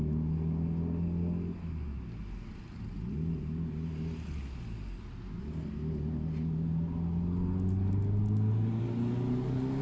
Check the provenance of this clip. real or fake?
real